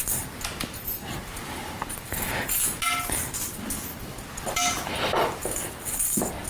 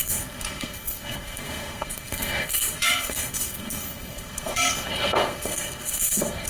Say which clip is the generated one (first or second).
second